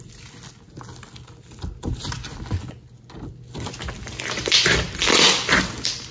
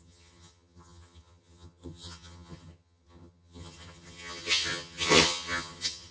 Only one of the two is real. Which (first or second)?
first